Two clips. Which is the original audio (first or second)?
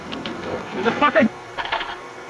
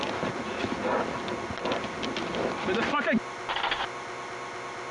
second